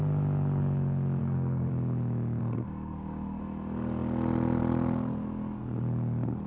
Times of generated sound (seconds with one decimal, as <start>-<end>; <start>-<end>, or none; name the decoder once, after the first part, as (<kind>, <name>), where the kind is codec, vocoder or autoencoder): 1.2-1.7 (codec, SNAC); 2.4-3.4